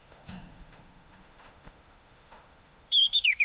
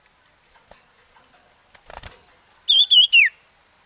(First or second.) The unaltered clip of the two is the second